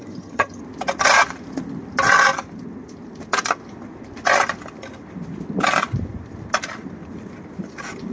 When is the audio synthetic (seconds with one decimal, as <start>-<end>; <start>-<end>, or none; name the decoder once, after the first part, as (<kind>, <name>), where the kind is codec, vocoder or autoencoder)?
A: 0.0-0.6 (vocoder, HiFi-GAN)